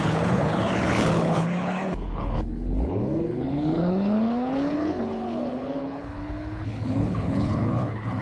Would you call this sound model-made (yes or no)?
yes